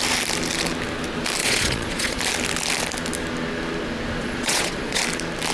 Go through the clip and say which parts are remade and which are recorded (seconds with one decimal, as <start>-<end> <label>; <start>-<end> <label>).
0.0-1.4 recorded; 1.4-2.2 remade; 2.2-4.2 recorded; 4.2-5.0 remade; 5.0-5.5 recorded